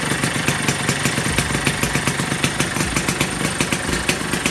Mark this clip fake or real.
real